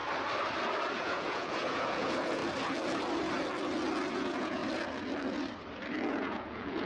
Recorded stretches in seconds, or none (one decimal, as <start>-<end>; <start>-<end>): 0.0-1.0; 2.4-4.1; 4.6-6.1